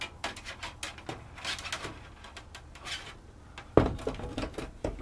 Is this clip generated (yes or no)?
no